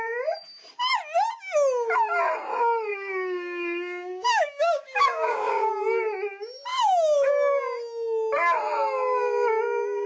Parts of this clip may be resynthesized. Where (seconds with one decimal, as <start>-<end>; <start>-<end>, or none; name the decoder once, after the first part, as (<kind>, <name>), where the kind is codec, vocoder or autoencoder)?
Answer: 2.9-5.7 (codec, DAC); 6.7-7.3